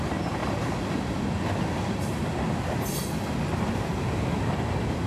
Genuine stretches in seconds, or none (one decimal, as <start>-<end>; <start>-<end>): 0.4-3.5